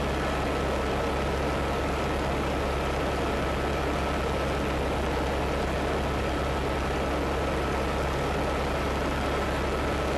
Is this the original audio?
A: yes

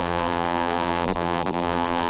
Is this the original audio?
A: no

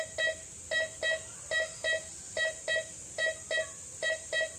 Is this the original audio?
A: yes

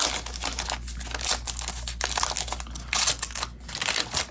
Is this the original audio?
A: yes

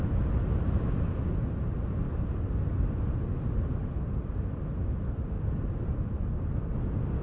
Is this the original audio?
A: yes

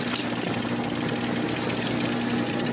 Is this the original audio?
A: yes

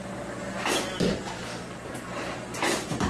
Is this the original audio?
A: yes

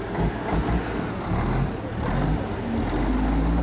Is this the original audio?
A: yes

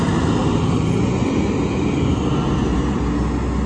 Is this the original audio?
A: yes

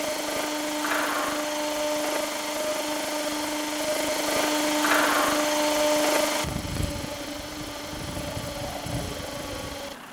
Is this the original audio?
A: yes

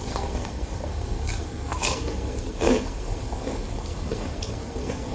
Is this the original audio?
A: no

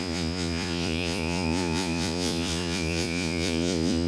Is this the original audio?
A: no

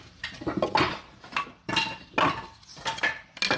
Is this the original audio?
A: yes